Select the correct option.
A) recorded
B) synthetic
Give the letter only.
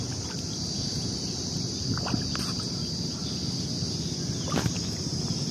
A